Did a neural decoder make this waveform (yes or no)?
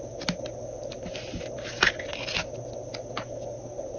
no